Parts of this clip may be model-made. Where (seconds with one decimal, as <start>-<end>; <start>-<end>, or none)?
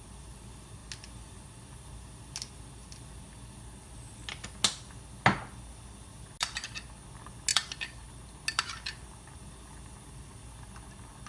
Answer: 7.5-8.1